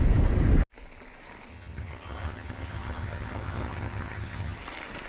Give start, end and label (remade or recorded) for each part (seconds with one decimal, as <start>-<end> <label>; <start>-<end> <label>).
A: 0.0-1.5 recorded; 1.5-4.6 remade; 4.6-5.1 recorded